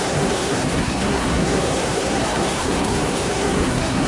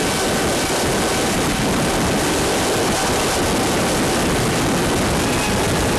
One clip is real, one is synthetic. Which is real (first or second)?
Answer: second